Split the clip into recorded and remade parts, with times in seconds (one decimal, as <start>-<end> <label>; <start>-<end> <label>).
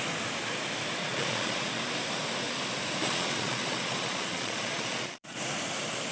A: 0.0-1.0 recorded; 1.0-1.8 remade; 1.8-3.0 recorded; 3.0-5.4 remade; 5.4-6.1 recorded